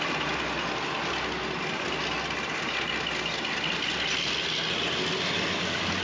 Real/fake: real